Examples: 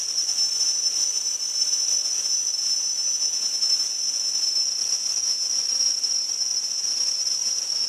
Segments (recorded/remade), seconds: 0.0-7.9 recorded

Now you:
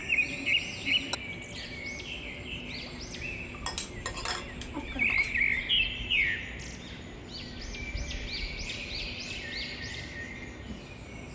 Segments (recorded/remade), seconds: 0.0-11.3 recorded

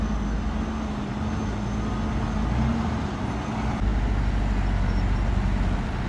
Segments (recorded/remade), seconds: 0.0-2.7 recorded; 2.7-3.3 remade; 3.3-6.1 recorded

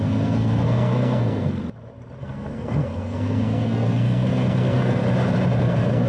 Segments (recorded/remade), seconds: 0.0-1.6 remade; 1.6-2.2 recorded; 2.2-5.0 remade; 5.0-5.6 recorded; 5.6-6.1 remade

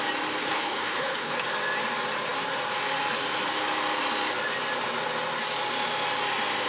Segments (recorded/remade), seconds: 0.0-0.4 recorded; 0.4-1.3 remade; 1.3-6.7 recorded

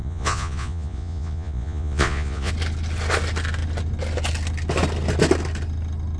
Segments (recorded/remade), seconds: 0.0-2.5 remade; 2.5-6.2 recorded